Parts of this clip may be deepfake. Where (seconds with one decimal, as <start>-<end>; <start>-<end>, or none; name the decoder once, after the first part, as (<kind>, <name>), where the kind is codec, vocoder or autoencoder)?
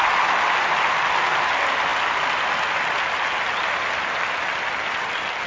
none